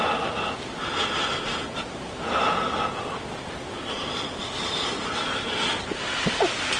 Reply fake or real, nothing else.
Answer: real